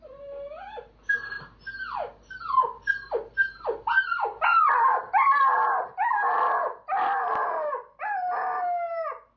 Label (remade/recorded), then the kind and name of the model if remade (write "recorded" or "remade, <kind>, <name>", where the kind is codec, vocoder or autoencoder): recorded